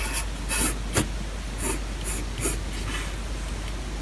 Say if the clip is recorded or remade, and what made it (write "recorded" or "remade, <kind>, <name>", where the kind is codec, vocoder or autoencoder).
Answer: recorded